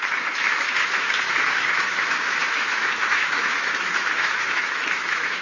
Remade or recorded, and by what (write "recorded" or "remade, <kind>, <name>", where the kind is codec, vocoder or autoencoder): remade, autoencoder, DAC-VAE